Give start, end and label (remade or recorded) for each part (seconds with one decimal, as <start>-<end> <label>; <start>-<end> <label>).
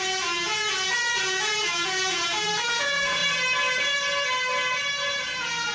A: 0.0-3.2 remade; 3.2-5.1 recorded; 5.1-5.7 remade